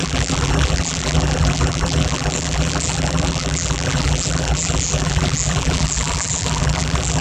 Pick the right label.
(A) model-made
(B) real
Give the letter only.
A